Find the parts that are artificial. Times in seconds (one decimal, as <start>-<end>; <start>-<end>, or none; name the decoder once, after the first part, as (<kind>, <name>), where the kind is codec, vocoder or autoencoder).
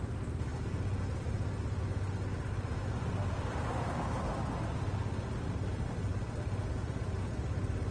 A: none